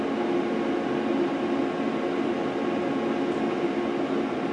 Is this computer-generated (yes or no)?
no